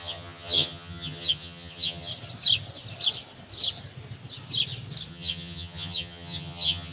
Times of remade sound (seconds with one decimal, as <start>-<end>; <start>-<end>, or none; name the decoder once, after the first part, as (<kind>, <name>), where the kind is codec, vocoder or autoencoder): 0.0-2.1 (vocoder, HiFi-GAN); 5.1-6.9